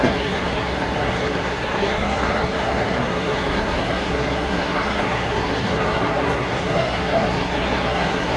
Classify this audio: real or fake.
fake